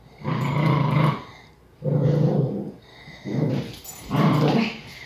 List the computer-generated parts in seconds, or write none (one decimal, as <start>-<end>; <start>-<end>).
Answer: 2.9-3.5